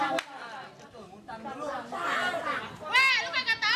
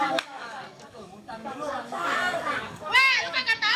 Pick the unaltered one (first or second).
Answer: first